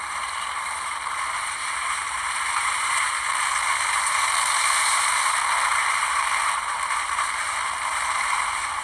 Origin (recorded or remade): remade